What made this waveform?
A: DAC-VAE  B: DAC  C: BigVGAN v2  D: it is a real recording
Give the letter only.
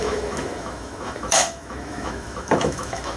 A